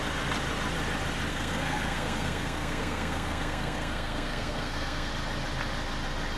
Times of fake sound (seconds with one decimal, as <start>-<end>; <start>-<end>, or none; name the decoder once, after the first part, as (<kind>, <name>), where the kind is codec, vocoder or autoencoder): 1.3-5.1 (codec, SNAC)